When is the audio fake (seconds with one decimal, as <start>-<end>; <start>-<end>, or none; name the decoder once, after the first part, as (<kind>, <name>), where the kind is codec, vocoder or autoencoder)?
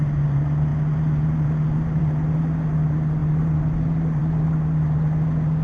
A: none